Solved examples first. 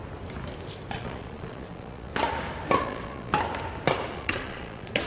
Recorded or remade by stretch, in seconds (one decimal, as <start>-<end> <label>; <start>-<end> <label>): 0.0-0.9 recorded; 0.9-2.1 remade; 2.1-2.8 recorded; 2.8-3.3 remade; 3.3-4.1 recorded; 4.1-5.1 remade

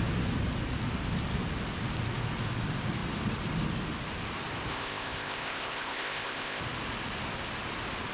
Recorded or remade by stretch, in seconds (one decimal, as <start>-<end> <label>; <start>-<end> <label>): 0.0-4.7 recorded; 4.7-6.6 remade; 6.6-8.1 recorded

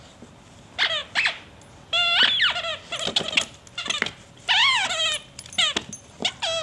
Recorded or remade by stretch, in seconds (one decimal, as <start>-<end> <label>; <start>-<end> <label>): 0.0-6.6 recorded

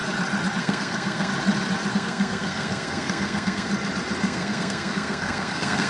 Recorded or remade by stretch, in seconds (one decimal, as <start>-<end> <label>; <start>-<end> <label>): 0.0-0.6 recorded; 0.6-1.3 remade; 1.3-1.9 recorded; 1.9-3.7 remade; 3.7-4.2 recorded; 4.2-5.9 remade